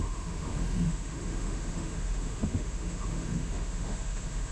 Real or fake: fake